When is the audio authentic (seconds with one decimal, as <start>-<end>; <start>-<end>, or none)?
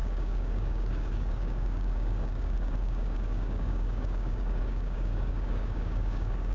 none